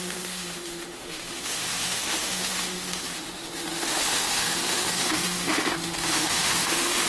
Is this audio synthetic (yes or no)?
yes